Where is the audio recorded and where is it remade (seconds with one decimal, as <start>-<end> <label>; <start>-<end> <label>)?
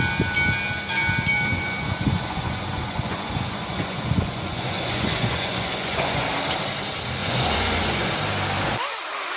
0.0-1.5 recorded; 1.5-6.3 remade; 6.3-7.2 recorded; 7.2-8.1 remade; 8.1-9.4 recorded